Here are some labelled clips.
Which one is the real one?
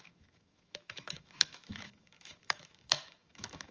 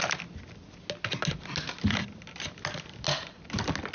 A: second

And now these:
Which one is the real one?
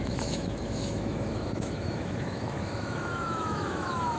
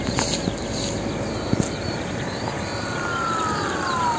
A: second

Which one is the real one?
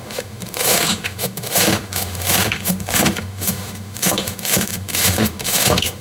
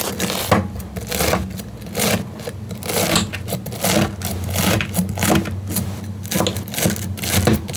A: second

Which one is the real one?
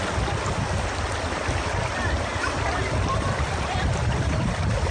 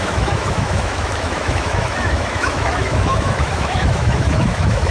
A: first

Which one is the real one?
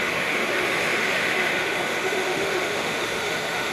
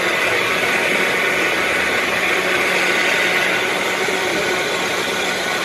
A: second